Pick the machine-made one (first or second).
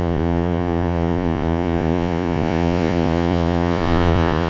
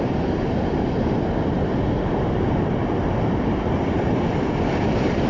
first